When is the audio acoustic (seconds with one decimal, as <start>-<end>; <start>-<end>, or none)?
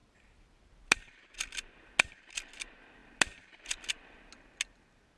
0.0-5.2